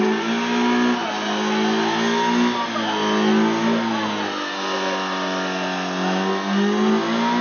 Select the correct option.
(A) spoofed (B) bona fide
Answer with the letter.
B